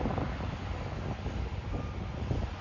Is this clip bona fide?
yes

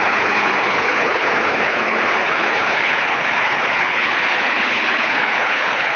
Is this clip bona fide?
no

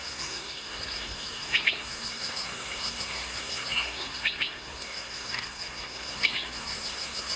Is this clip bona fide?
no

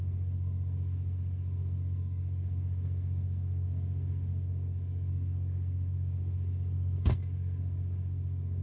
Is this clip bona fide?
no